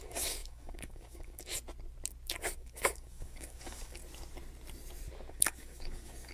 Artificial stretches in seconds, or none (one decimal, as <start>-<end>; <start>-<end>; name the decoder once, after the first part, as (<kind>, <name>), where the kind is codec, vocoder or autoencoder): 0.0-1.5 (codec, DAC); 2.4-4.0; 5.3-6.3

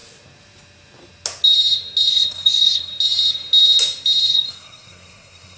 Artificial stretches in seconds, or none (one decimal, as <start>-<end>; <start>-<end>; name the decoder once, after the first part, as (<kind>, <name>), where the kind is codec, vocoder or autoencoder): 2.1-2.9 (codec, SNAC); 4.3-5.6

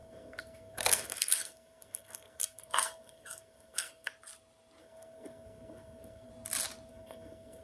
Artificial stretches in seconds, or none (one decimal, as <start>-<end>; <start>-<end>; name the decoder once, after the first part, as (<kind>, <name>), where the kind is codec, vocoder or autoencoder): 0.0-4.1 (codec, SNAC); 4.8-6.3; 6.9-7.6

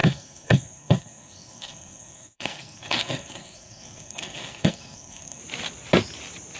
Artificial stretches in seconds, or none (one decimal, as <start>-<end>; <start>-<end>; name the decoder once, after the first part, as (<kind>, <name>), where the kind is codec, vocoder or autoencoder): 0.0-5.4 (codec, SNAC)

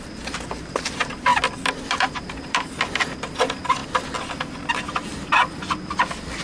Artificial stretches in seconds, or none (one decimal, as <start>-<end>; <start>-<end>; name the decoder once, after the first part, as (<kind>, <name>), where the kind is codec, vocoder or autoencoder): none

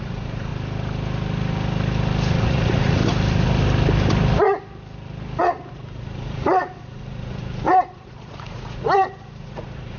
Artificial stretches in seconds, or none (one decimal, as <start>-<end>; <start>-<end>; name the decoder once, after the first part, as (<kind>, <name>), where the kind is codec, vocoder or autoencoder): 0.0-0.5 (vocoder, Vocos); 2.3-3.0; 5.4-10.0

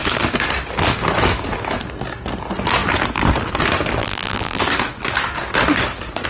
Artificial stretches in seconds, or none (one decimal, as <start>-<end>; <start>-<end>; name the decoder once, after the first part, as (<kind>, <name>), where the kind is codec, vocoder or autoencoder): 4.0-4.6 (vocoder, BigVGAN v2)

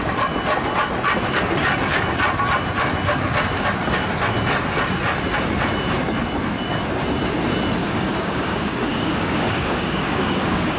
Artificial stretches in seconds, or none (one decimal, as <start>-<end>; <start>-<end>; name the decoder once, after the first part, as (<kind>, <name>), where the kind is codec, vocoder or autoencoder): 7.8-10.8 (codec, DAC)